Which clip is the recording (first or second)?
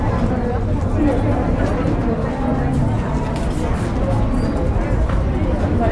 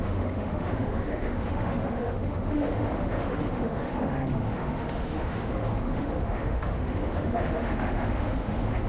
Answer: first